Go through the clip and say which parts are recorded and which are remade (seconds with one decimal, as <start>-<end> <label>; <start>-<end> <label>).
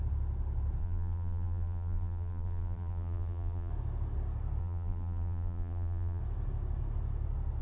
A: 0.0-0.8 recorded; 0.8-3.7 remade; 3.7-4.6 recorded; 4.6-6.2 remade; 6.2-7.6 recorded